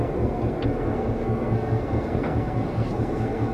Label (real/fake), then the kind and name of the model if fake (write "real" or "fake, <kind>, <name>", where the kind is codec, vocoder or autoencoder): fake, codec, SNAC